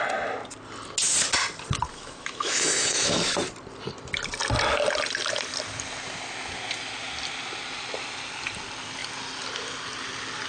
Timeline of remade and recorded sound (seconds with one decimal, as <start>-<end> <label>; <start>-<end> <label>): 0.0-1.9 recorded; 1.9-3.2 remade; 3.2-10.5 recorded